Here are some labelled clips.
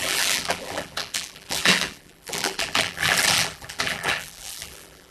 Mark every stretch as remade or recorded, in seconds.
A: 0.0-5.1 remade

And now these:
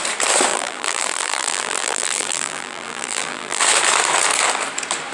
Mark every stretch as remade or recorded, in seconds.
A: 0.0-0.5 recorded; 0.5-3.6 remade; 3.6-5.1 recorded

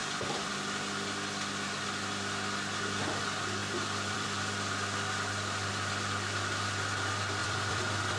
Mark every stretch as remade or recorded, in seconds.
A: 0.0-0.5 remade; 0.5-3.6 recorded; 3.6-5.7 remade; 5.7-7.4 recorded; 7.4-8.2 remade

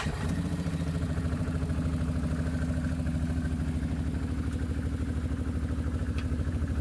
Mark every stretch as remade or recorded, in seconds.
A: 0.0-1.9 remade; 1.9-6.0 recorded; 6.0-6.8 remade

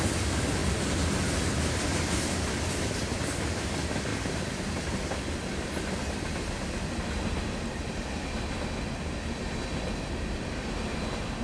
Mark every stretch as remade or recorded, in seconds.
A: 0.0-4.1 recorded; 4.1-6.2 remade; 6.2-11.4 recorded

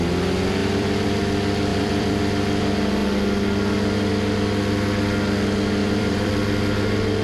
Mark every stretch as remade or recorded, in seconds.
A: 0.0-0.6 recorded; 0.6-1.2 remade; 1.2-1.7 recorded; 1.7-2.2 remade; 2.2-5.8 recorded; 5.8-6.3 remade; 6.3-7.2 recorded

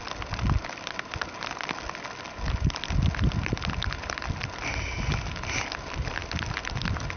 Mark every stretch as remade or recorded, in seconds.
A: 0.0-7.2 recorded

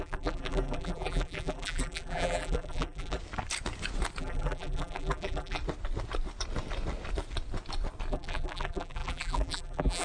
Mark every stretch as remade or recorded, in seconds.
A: 0.0-3.2 remade; 3.2-4.2 recorded; 4.2-5.6 remade; 5.6-8.1 recorded; 8.1-10.0 remade